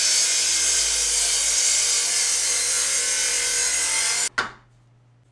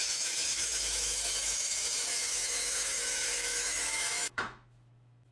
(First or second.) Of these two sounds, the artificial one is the second